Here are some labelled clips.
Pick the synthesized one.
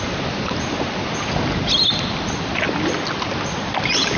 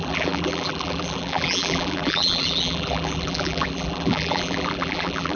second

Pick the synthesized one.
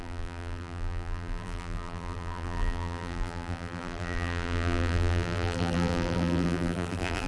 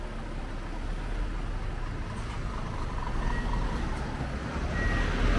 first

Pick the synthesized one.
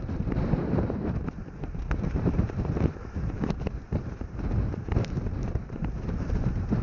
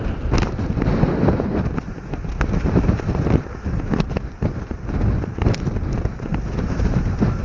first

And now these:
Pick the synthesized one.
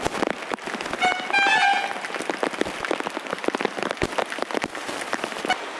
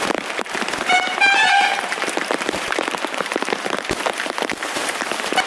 second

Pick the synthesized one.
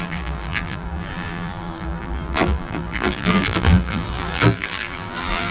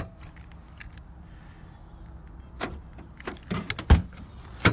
first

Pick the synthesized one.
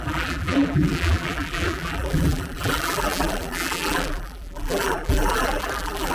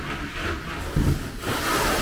first